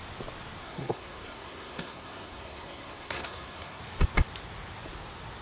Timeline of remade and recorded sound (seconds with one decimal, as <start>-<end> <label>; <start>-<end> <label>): 0.0-0.6 recorded; 0.6-3.8 remade; 3.8-5.4 recorded

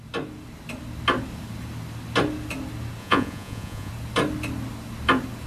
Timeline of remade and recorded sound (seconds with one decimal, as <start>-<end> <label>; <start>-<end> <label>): 0.0-3.0 recorded; 3.0-3.9 remade; 3.9-5.5 recorded

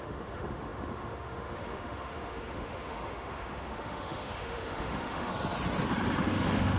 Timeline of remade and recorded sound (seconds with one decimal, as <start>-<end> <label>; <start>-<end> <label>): 0.0-5.3 remade; 5.3-6.2 recorded; 6.2-6.8 remade

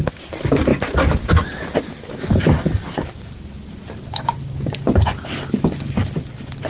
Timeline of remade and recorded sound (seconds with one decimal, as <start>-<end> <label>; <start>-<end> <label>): 0.0-6.7 recorded

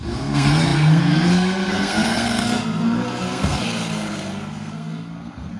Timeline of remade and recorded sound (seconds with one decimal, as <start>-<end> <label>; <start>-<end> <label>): 0.0-5.6 remade

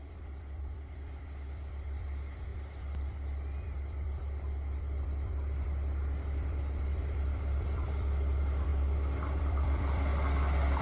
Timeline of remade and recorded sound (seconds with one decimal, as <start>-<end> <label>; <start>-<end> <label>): 0.0-8.7 remade; 8.7-9.4 recorded; 9.4-10.1 remade; 10.1-10.8 recorded